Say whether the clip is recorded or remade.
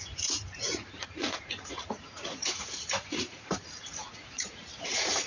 remade